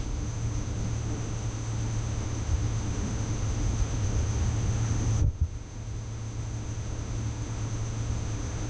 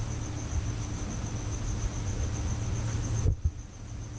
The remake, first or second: first